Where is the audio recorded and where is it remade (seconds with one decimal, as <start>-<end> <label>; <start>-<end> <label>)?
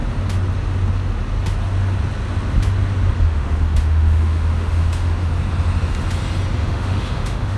0.0-3.2 recorded; 3.2-5.3 remade; 5.3-6.6 recorded; 6.6-7.6 remade